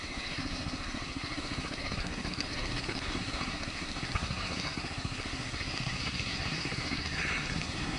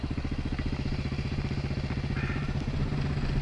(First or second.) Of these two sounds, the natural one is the second